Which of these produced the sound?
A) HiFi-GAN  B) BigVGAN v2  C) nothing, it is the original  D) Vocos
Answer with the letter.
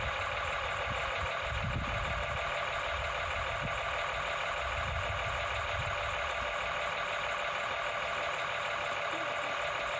C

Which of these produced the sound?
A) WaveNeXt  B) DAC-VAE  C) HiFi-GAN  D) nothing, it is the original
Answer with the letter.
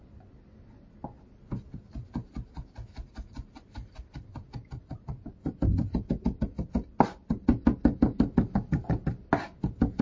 D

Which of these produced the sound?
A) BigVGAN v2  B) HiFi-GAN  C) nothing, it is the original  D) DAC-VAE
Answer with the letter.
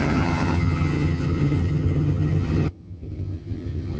B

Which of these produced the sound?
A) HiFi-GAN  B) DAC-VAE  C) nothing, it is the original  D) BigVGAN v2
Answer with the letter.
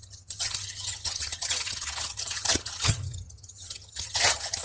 A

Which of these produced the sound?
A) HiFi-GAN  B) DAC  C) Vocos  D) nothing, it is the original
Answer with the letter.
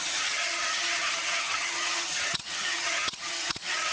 A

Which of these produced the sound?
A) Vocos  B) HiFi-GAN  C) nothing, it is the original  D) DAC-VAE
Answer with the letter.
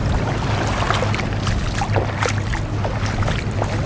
C